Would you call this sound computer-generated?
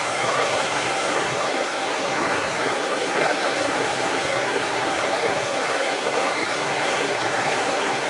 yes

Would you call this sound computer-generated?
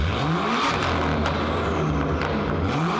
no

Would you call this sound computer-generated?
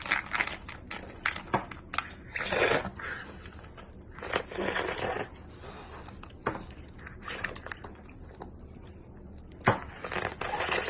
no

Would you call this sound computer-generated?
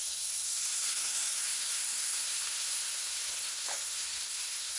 yes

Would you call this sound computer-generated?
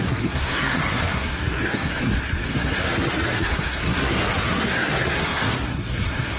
yes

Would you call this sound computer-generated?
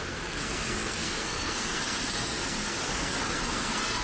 yes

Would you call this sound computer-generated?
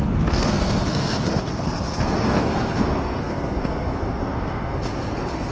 yes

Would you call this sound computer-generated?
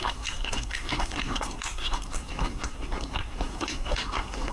yes